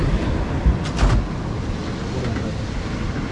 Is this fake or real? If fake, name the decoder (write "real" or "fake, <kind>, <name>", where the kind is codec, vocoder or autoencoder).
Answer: real